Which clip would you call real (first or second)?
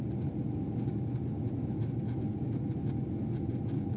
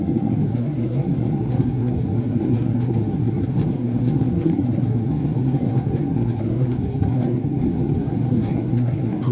first